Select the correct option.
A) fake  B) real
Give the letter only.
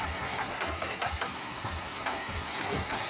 A